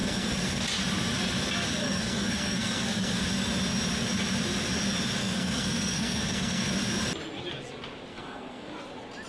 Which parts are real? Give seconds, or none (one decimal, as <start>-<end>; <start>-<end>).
0.6-1.8; 3.2-5.2; 6.7-8.1; 8.8-9.3